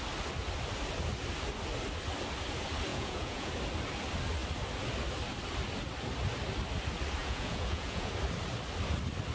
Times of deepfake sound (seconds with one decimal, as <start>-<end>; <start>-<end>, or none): 2.9-3.5; 7.2-8.1